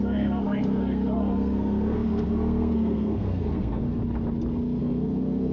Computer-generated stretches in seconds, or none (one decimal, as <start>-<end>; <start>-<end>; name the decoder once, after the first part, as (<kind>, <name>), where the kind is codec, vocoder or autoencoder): 0.0-4.0 (codec, SNAC); 4.8-5.5